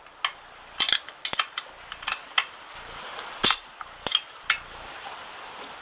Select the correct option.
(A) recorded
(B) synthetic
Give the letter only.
A